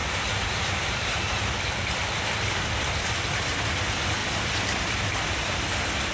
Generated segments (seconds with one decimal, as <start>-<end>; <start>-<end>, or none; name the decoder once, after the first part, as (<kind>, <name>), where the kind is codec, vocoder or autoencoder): 0.0-3.6 (vocoder, BigVGAN v2); 4.2-6.1